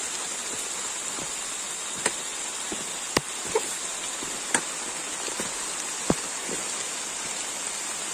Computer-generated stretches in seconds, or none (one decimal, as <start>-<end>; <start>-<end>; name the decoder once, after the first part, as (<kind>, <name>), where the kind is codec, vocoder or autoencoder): none